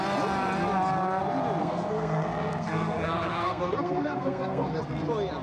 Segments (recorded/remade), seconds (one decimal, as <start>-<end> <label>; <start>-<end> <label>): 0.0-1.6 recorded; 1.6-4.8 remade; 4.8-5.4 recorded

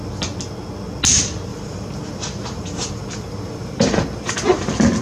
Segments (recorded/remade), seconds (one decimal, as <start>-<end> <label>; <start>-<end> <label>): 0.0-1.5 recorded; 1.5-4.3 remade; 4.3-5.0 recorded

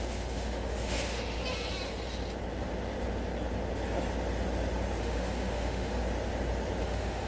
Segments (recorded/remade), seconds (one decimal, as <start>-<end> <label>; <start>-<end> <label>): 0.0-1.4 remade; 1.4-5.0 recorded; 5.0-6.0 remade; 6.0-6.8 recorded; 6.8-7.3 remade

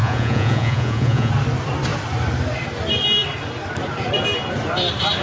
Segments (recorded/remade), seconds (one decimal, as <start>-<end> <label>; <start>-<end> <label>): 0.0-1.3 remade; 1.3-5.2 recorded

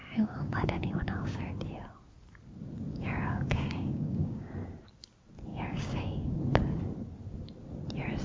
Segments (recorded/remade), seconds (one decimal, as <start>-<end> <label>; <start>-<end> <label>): 0.0-1.4 remade; 1.4-2.9 recorded; 2.9-4.5 remade; 4.5-5.5 recorded; 5.5-6.4 remade; 6.4-8.2 recorded

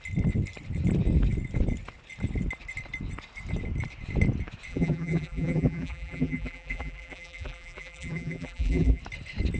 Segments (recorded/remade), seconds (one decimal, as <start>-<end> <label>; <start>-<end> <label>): 0.0-4.7 recorded; 4.7-9.0 remade; 9.0-9.6 recorded

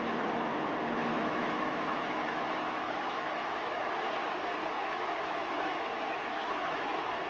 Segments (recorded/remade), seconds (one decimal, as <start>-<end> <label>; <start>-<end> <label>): 0.0-1.1 recorded; 1.1-3.9 remade; 3.9-4.6 recorded; 4.6-7.3 remade

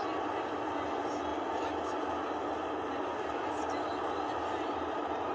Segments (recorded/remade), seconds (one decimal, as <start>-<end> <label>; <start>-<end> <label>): 0.0-5.3 recorded